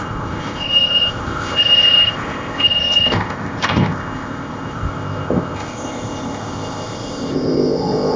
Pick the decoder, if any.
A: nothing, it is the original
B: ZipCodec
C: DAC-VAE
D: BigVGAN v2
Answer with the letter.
B